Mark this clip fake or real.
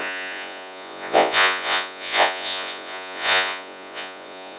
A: fake